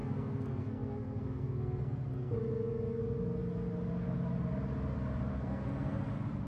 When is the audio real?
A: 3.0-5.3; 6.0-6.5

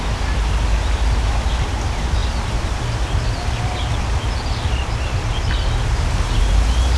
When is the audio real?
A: 0.0-7.0